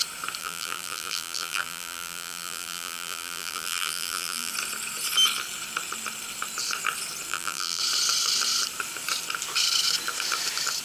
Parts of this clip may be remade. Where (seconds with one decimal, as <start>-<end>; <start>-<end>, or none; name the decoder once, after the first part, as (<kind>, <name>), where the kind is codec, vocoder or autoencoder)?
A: 0.4-4.5 (vocoder, BigVGAN v2); 7.3-7.8